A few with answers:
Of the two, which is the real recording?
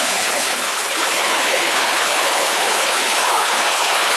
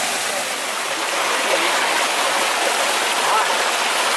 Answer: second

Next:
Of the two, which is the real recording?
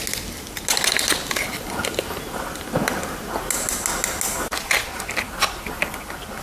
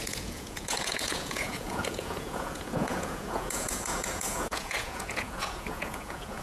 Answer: first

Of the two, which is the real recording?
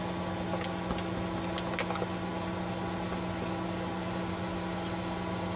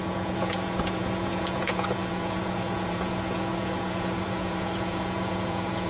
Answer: first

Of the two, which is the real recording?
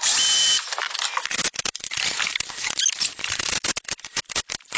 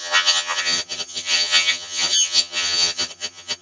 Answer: first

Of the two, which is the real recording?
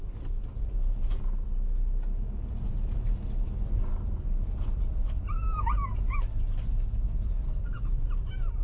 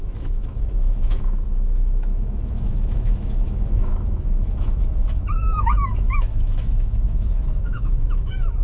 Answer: first